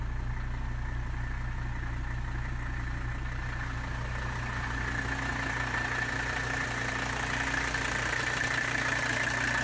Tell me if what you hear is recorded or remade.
recorded